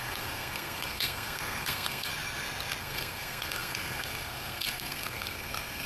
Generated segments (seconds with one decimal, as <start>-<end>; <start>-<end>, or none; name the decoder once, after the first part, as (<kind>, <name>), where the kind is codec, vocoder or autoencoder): 0.0-2.1 (codec, SNAC); 2.8-5.9